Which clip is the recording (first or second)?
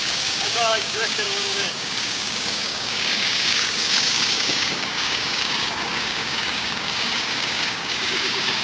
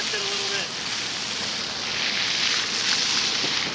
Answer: second